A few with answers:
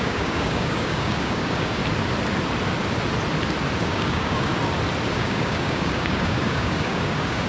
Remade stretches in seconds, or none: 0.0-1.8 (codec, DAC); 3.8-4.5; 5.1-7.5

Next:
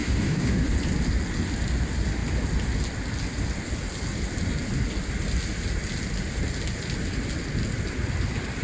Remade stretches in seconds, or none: 0.0-0.7 (autoencoder, DAC-VAE)